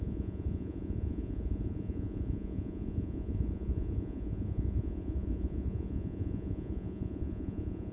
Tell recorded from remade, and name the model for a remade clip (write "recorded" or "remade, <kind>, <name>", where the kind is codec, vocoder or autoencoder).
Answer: remade, vocoder, Vocos